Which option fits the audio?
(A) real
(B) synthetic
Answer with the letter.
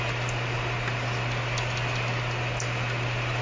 A